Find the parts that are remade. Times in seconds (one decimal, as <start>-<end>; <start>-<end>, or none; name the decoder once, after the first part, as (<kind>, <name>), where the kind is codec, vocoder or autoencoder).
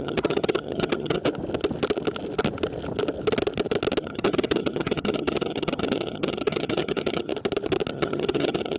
0.0-1.2 (vocoder, HiFi-GAN); 4.0-7.3; 7.9-8.8